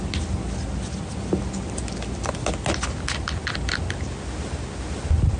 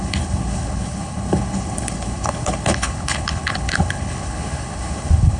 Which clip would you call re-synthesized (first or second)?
second